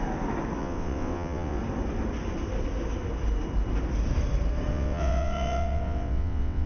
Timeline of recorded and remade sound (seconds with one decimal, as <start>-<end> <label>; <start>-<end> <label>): 0.0-0.6 recorded; 0.6-1.6 remade; 1.6-4.7 recorded; 4.7-6.7 remade